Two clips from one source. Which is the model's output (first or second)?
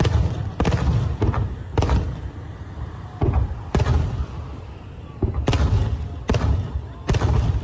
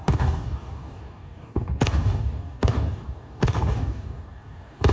second